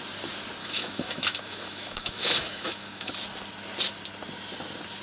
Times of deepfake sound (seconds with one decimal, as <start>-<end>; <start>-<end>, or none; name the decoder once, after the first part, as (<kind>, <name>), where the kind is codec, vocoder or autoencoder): 0.6-3.1 (autoencoder, DAC-VAE)